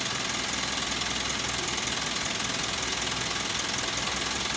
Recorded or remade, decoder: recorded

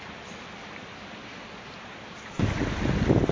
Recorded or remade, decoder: recorded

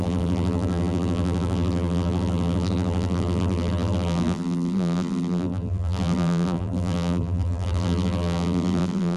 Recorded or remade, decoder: remade, vocoder, BigVGAN v2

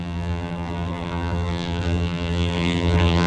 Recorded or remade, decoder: remade, vocoder, BigVGAN v2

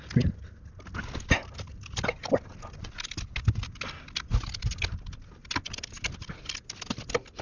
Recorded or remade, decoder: recorded